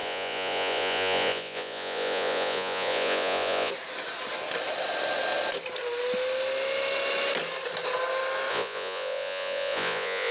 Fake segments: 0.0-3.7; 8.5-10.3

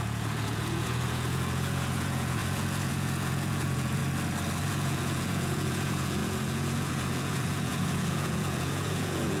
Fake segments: 0.0-4.0; 4.6-9.4